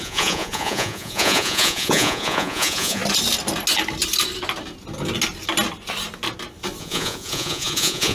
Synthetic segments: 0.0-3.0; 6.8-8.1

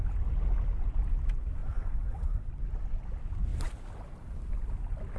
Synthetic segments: 1.6-2.5